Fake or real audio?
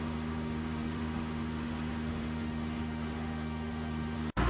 fake